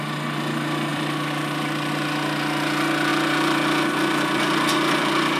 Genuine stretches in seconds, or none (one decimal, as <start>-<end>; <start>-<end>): 0.0-0.9; 1.9-3.1; 3.9-5.4